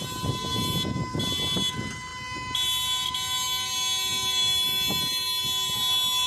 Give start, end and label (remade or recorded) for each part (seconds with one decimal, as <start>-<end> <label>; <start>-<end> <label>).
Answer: 0.0-6.3 recorded